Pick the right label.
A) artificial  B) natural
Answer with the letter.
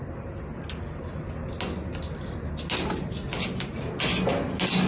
B